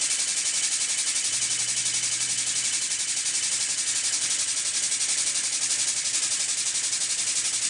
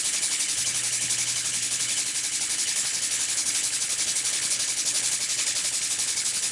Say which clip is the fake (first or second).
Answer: second